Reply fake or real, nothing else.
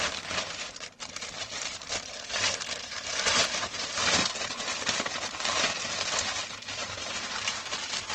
fake